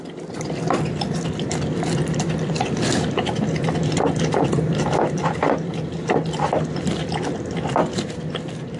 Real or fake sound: fake